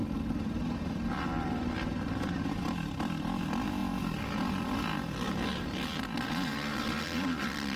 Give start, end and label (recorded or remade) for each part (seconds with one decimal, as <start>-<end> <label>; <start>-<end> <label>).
0.0-7.8 recorded

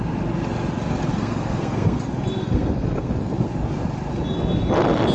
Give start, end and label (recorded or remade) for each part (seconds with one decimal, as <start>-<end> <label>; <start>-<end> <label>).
0.0-1.1 recorded; 1.1-2.0 remade; 2.0-2.4 recorded; 2.4-3.1 remade; 3.1-5.1 recorded

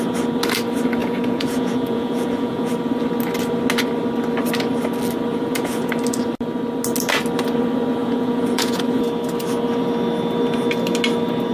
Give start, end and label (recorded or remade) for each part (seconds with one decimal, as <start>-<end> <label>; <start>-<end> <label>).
0.0-1.0 recorded; 1.0-2.7 remade; 2.7-5.3 recorded; 5.3-5.9 remade; 5.9-8.0 recorded; 8.0-8.8 remade; 8.8-11.5 recorded

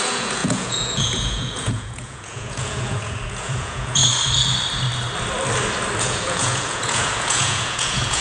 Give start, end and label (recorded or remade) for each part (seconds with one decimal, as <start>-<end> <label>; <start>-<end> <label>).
0.0-4.0 remade; 4.0-6.0 recorded; 6.0-8.2 remade

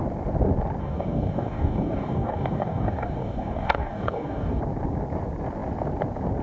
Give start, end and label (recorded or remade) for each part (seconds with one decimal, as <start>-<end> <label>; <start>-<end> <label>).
0.0-0.8 recorded; 0.8-4.6 remade; 4.6-6.4 recorded

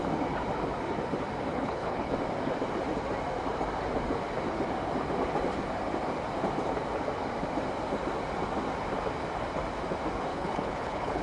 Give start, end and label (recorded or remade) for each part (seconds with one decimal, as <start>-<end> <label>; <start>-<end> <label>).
0.0-1.5 recorded; 1.5-2.1 remade; 2.1-10.3 recorded; 10.3-11.2 remade

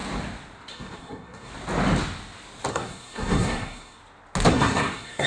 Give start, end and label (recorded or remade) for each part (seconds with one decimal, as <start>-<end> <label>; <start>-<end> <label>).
0.0-0.7 recorded; 0.7-1.5 remade; 1.5-2.7 recorded; 2.7-4.0 remade; 4.0-4.5 recorded; 4.5-5.3 remade